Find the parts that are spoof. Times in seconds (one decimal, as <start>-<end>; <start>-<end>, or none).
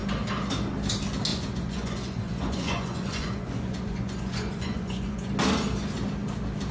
1.3-5.3